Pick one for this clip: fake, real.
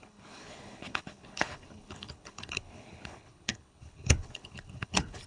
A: fake